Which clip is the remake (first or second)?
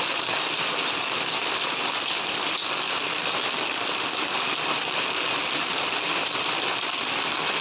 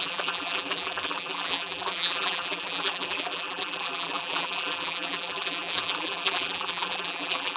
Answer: second